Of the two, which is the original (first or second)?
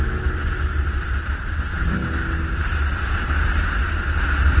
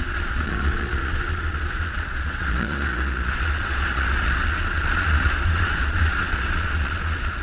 first